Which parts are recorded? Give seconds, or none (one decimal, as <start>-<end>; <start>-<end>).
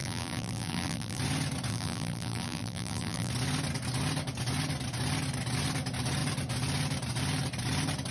1.2-1.7; 3.3-8.1